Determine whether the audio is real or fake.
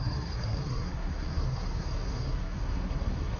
fake